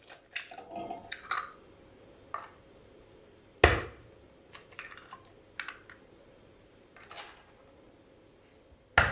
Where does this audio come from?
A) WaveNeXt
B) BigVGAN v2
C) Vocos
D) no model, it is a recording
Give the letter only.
D